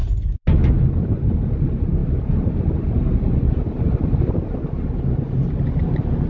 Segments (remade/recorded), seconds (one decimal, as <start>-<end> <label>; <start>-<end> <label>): 0.0-6.3 recorded